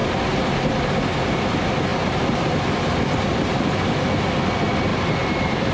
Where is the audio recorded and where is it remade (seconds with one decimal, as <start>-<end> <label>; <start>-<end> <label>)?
0.0-1.9 recorded; 1.9-2.7 remade; 2.7-4.9 recorded; 4.9-5.7 remade